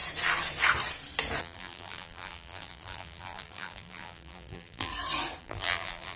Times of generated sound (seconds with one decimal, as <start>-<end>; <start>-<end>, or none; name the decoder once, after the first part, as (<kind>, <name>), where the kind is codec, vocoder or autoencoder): 1.4-4.9 (vocoder, BigVGAN v2); 5.4-6.2